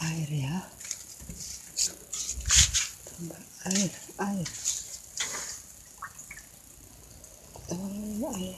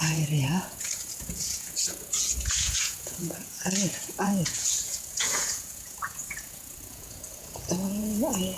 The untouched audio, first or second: first